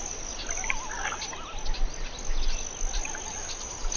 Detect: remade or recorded recorded